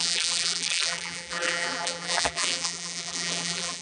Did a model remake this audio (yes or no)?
yes